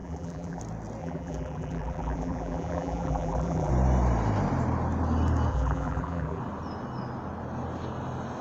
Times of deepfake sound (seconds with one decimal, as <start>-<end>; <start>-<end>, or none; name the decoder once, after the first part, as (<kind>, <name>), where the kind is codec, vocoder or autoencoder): 0.0-0.6 (vocoder, BigVGAN v2); 1.0-3.7; 5.5-6.4